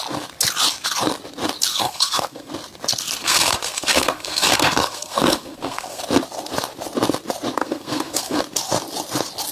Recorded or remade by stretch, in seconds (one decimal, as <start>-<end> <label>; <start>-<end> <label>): 0.0-1.7 recorded; 1.7-2.5 remade; 2.5-3.2 recorded; 3.2-6.0 remade; 6.0-7.6 recorded; 7.6-8.4 remade; 8.4-9.5 recorded